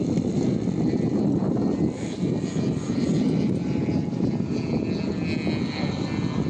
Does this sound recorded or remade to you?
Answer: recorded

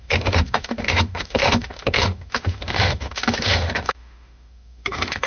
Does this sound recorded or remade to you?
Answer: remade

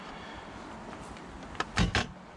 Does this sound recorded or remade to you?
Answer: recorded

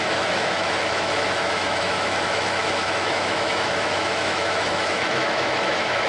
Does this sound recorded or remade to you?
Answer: remade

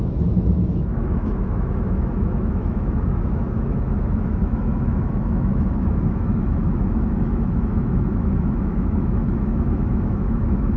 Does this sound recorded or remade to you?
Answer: remade